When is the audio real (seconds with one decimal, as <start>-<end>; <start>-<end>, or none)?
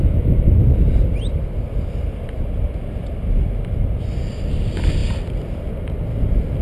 0.0-6.6